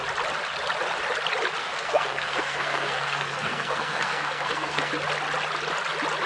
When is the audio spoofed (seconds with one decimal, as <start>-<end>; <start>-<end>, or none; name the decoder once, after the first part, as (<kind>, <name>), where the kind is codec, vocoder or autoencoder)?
1.6-4.9 (codec, SNAC)